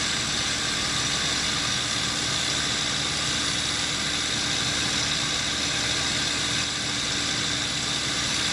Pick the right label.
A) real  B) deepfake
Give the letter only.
A